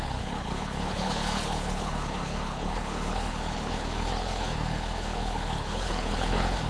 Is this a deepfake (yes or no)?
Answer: yes